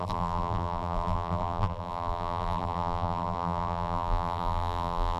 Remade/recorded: remade